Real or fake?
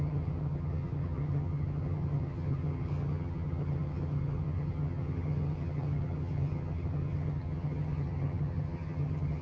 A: fake